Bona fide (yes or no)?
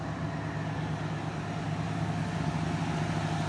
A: yes